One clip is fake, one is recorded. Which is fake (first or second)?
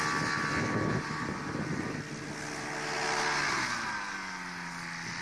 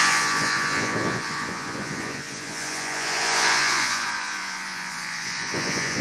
second